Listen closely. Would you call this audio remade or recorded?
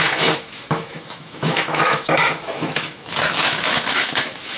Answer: remade